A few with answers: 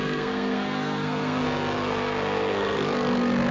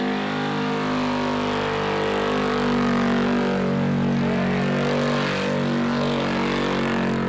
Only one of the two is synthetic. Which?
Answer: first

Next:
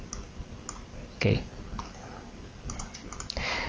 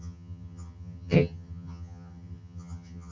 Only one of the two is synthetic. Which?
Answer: second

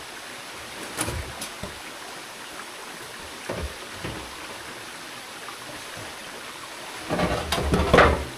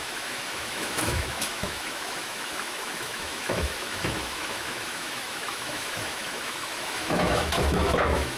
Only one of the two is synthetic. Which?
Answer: second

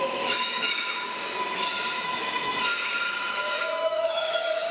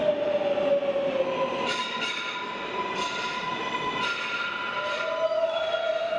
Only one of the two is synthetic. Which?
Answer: first